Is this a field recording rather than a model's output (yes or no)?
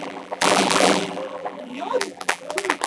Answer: no